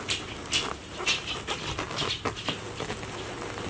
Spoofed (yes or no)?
no